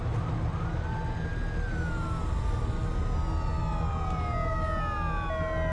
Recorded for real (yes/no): yes